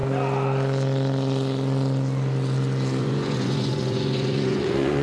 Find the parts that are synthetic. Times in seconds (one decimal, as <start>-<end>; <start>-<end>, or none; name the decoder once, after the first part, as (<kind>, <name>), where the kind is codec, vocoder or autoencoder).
3.0-5.0 (vocoder, Vocos)